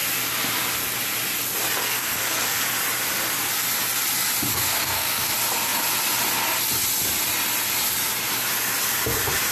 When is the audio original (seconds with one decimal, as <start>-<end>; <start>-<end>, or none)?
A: 0.0-1.8; 2.6-4.5; 5.3-9.5